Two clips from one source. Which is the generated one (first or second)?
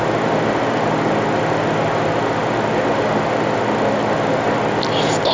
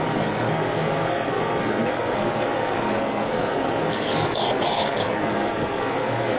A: second